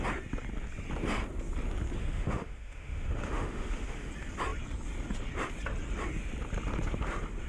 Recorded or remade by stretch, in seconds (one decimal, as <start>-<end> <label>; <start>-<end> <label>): 0.0-2.0 recorded; 2.0-4.1 remade; 4.1-7.5 recorded

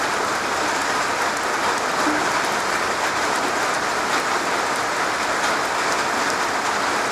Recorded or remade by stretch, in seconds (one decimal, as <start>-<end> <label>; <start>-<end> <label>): 0.0-0.8 recorded; 0.8-5.0 remade; 5.0-7.1 recorded

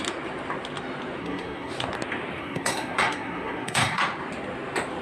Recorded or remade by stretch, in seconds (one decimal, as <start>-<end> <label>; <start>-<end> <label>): 0.0-1.2 recorded; 1.2-1.7 remade; 1.7-2.4 recorded; 2.4-4.0 remade; 4.0-5.0 recorded